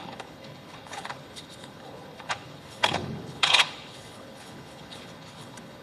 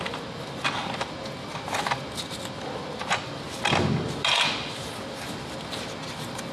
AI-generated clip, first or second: first